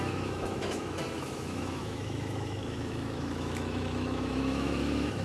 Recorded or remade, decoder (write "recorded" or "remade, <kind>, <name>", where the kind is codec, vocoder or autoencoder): remade, autoencoder, DAC-VAE